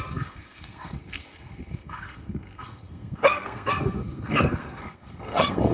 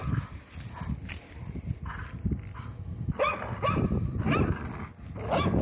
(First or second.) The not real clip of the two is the first